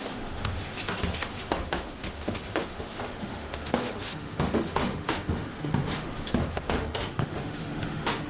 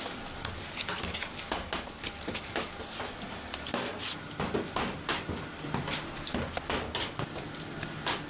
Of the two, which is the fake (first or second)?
first